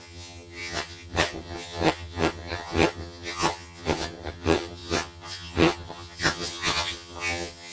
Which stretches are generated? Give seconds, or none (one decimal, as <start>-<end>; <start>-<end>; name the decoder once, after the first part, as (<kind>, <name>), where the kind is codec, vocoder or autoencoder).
0.0-7.7 (vocoder, HiFi-GAN)